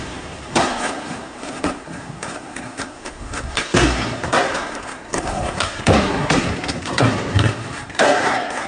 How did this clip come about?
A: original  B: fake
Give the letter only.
B